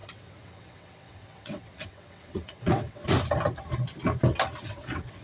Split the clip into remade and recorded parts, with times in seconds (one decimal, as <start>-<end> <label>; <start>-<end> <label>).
0.0-3.0 remade; 3.0-4.6 recorded; 4.6-5.2 remade